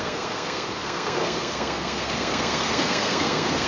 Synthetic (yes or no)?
yes